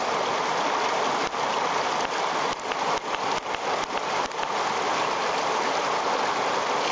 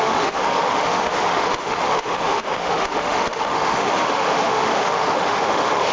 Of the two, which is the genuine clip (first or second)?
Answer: first